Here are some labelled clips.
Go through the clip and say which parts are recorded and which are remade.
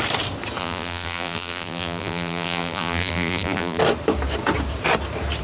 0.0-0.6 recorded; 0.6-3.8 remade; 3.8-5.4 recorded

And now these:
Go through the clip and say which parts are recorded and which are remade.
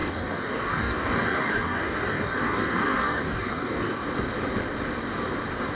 0.0-4.0 remade; 4.0-5.8 recorded